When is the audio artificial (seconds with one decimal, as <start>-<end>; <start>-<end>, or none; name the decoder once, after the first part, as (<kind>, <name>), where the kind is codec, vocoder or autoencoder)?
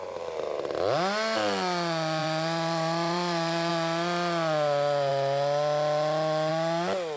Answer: 2.2-3.7 (vocoder, BigVGAN v2)